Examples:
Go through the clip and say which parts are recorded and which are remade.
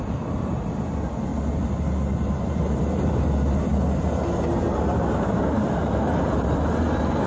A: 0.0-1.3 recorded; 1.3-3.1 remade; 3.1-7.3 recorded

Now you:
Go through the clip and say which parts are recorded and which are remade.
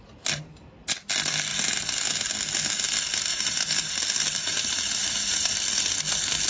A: 0.0-3.3 recorded; 3.3-4.0 remade; 4.0-4.4 recorded; 4.4-5.5 remade; 5.5-6.5 recorded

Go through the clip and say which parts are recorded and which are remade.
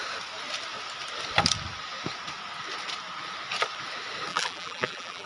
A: 0.0-4.3 recorded; 4.3-5.3 remade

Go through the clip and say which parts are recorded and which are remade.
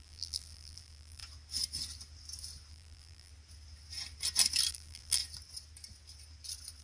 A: 0.0-1.2 remade; 1.2-2.7 recorded; 2.7-3.3 remade; 3.3-4.7 recorded; 4.7-5.2 remade; 5.2-6.8 recorded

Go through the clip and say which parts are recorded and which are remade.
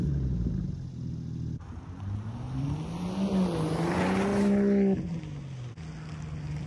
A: 0.0-6.7 recorded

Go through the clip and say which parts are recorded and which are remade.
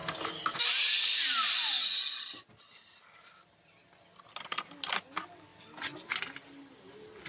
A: 0.0-7.3 recorded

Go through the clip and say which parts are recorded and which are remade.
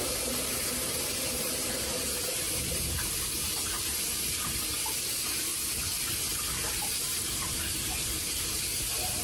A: 0.0-5.5 remade; 5.5-6.7 recorded; 6.7-9.2 remade